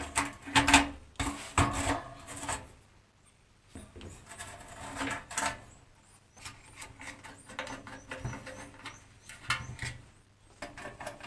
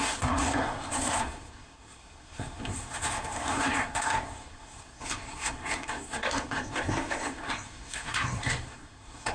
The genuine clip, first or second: first